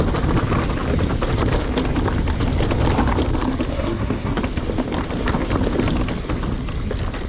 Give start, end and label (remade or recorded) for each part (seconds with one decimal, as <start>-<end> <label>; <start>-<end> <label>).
0.0-3.7 recorded; 3.7-4.4 remade; 4.4-7.3 recorded